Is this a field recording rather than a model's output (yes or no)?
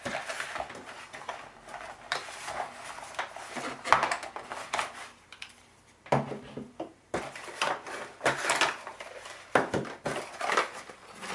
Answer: yes